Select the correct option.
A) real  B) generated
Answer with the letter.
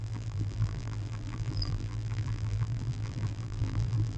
B